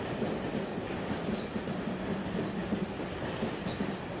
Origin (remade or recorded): recorded